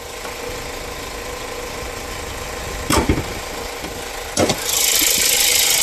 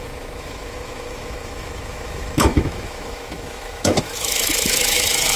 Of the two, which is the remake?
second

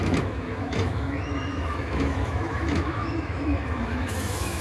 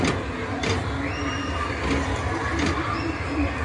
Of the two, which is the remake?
first